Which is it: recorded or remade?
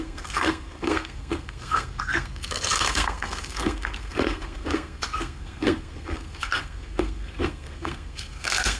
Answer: remade